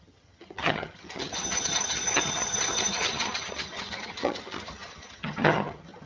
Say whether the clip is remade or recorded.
remade